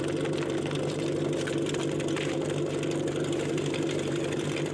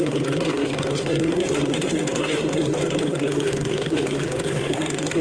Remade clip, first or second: second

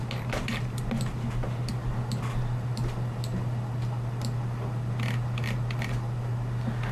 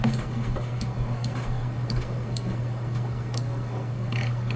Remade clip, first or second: second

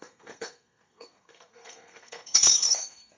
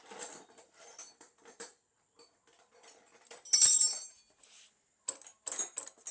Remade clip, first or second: first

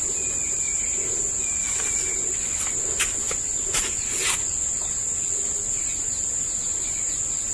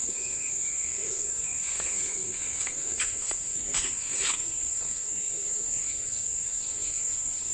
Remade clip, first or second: second